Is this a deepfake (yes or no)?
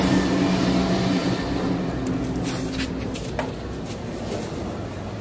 no